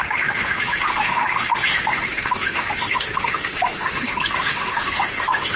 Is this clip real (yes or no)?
no